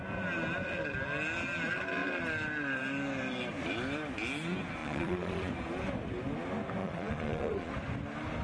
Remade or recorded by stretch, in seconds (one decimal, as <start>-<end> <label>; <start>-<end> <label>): 0.0-4.8 recorded; 4.8-5.5 remade; 5.5-6.8 recorded; 6.8-7.7 remade; 7.7-8.4 recorded